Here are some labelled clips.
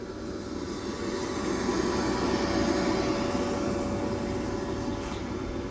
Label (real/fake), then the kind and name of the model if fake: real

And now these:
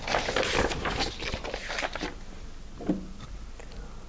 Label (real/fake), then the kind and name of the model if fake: real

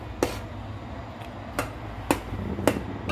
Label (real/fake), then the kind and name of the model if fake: real